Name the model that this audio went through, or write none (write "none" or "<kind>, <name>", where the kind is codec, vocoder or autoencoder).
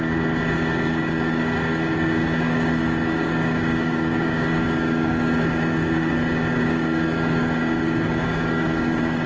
codec, DAC